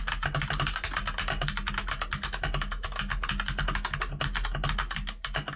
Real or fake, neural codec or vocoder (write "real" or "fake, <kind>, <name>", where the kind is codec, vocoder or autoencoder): real